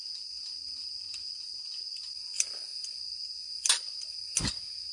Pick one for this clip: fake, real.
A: real